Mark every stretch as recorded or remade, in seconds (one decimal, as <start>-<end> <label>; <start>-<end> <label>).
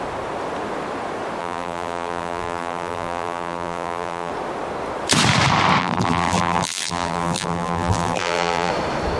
0.0-1.4 recorded; 1.4-4.3 remade; 4.3-5.8 recorded; 5.8-8.7 remade; 8.7-9.2 recorded